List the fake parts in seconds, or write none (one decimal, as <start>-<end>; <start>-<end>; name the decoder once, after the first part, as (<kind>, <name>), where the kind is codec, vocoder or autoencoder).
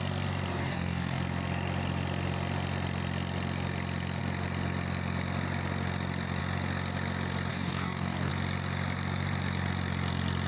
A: 0.6-1.2 (codec, DAC); 7.5-8.3